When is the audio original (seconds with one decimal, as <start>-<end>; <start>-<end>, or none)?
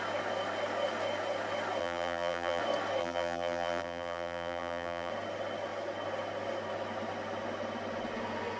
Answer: 0.0-1.8; 2.6-3.0; 5.1-8.6